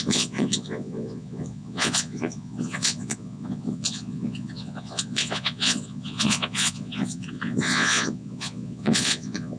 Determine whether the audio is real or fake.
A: fake